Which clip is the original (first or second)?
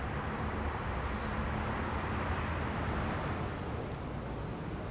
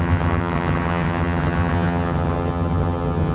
first